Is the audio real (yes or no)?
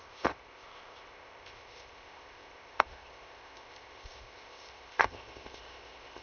no